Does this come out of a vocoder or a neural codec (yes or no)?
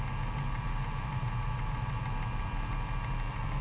no